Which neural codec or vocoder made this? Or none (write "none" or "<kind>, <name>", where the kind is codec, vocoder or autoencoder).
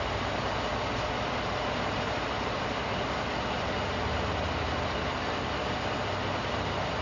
none